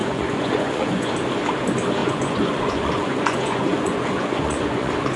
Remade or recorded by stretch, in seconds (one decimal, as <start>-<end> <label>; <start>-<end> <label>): 0.0-1.1 remade; 1.1-2.0 recorded; 2.0-5.2 remade